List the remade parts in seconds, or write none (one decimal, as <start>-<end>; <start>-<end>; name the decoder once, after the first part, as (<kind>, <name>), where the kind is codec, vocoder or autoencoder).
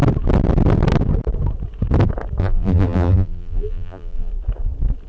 2.4-4.3 (vocoder, BigVGAN v2)